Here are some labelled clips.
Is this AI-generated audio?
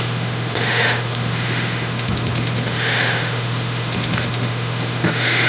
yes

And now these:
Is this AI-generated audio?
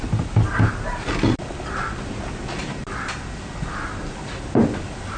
no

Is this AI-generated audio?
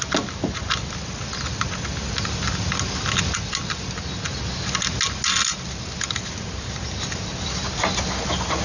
no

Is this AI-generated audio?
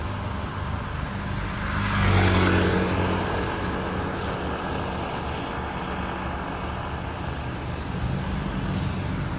no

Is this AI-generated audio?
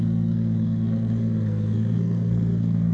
yes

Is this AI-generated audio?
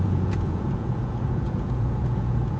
yes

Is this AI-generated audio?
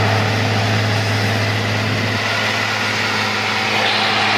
no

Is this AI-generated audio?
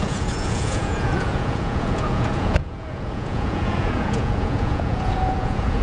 yes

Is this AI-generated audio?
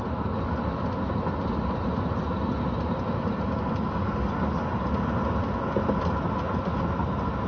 no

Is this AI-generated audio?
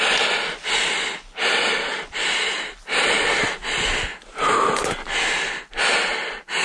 no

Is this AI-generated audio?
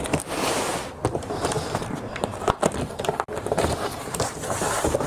yes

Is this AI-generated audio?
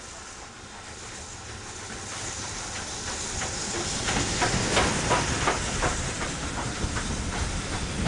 no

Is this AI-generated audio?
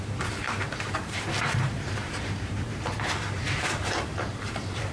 yes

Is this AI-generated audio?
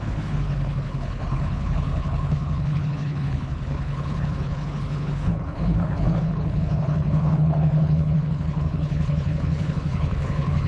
yes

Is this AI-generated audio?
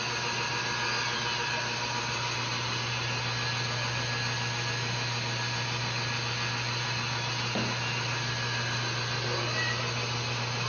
no